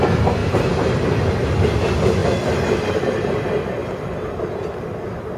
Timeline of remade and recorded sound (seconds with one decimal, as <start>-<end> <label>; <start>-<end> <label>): 0.0-0.4 recorded; 0.4-1.3 remade; 1.3-5.4 recorded